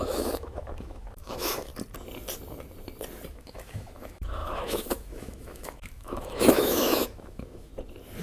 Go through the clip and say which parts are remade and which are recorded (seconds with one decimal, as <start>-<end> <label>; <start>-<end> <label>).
0.0-1.7 remade; 1.7-3.3 recorded; 3.3-7.7 remade; 7.7-8.2 recorded